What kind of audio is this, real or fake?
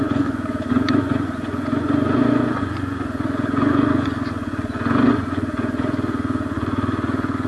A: fake